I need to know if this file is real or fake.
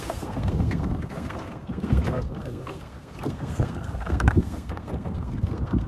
fake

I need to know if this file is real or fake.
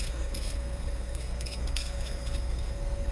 fake